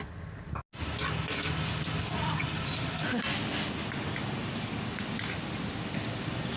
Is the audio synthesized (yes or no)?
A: no